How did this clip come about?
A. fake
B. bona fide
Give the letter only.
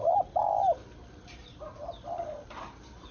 B